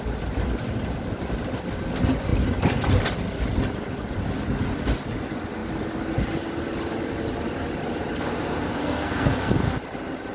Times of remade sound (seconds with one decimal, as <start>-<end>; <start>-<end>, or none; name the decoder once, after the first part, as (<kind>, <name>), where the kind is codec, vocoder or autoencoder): 8.8-9.5 (codec, SNAC)